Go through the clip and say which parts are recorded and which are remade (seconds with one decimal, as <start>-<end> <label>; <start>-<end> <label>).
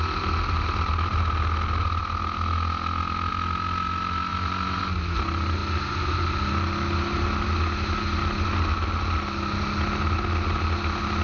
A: 0.0-11.2 recorded